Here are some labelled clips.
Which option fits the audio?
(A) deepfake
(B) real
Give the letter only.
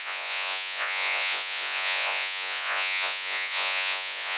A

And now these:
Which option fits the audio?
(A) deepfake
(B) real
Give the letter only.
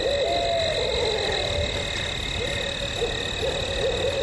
B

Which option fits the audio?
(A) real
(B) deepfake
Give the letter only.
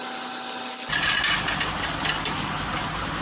A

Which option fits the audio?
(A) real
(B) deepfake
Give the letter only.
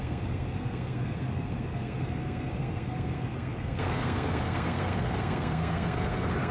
B